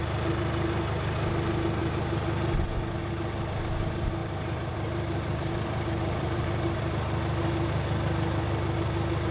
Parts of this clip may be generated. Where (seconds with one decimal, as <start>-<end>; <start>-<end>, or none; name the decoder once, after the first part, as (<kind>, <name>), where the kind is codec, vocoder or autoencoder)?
4.2-6.8 (vocoder, BigVGAN v2)